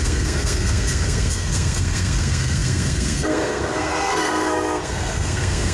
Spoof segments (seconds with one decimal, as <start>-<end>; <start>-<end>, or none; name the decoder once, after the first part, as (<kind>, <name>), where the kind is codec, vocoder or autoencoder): 0.0-5.7 (codec, SNAC)